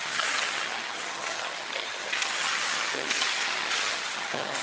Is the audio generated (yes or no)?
yes